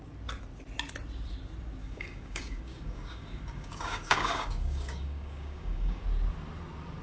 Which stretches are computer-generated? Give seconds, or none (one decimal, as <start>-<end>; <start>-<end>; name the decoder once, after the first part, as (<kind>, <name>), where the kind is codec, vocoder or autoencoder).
1.8-6.0 (codec, DAC)